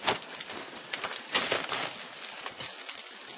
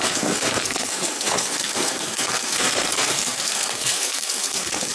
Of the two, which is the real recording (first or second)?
first